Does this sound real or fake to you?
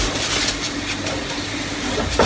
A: real